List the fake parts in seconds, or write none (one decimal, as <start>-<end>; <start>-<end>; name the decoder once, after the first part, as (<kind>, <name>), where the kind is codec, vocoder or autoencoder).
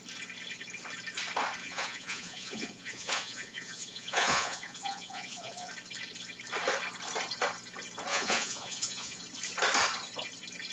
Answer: 1.6-5.7 (vocoder, Vocos); 8.1-9.2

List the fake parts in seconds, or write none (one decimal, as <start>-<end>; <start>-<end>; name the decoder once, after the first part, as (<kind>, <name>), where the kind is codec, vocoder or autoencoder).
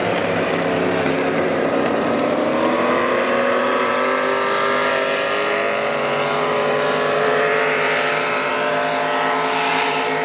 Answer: 0.0-3.9 (vocoder, BigVGAN v2); 6.4-8.5; 9.7-10.2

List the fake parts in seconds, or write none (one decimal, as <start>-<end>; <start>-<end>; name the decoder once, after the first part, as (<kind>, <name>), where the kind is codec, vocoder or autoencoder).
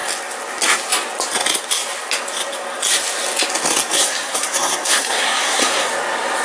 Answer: 3.9-5.9 (codec, SNAC)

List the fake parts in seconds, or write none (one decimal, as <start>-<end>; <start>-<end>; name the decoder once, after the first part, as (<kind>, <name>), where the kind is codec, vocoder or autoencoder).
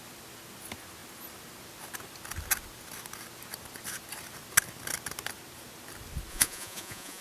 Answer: 6.3-7.2 (vocoder, Vocos)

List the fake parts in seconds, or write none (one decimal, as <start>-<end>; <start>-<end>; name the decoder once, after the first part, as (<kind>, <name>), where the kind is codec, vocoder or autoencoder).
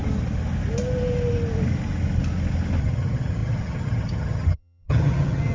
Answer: 2.8-5.5 (vocoder, HiFi-GAN)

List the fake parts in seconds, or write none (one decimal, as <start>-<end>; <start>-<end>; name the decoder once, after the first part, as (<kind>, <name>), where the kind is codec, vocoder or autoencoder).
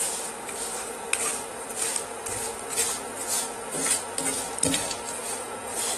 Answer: none